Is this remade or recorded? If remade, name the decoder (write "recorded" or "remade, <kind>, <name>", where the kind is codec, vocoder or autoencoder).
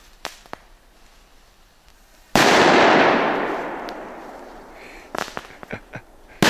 recorded